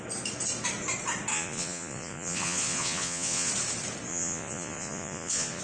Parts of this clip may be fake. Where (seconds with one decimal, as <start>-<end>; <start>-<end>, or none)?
1.3-3.5; 4.1-5.6